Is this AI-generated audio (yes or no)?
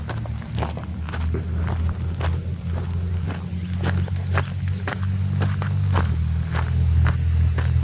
no